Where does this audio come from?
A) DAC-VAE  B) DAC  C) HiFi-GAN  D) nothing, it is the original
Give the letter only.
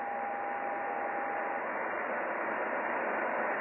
D